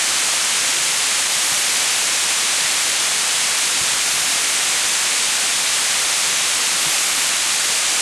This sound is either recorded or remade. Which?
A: remade